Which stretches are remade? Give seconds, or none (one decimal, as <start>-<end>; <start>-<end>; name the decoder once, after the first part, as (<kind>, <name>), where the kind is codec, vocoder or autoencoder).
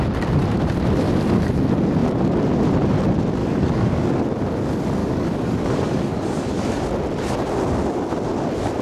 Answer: 3.4-4.1 (codec, DAC); 5.0-6.8